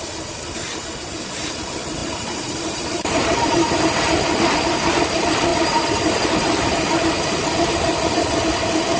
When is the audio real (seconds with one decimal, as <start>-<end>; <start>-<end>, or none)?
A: 0.0-2.0; 3.8-5.5; 7.2-9.0